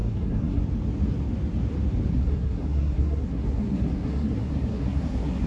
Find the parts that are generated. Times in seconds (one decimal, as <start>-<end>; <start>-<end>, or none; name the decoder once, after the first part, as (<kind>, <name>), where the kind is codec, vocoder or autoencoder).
0.0-0.6 (codec, SNAC); 2.1-5.5